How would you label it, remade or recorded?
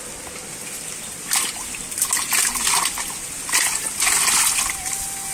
recorded